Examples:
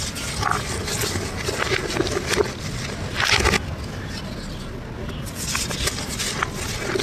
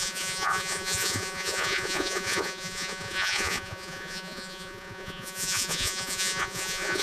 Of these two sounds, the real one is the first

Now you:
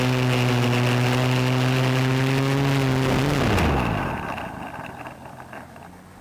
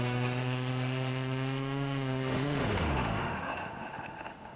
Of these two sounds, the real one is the first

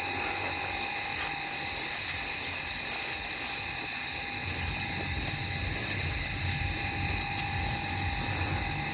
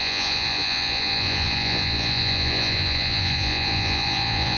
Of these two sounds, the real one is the first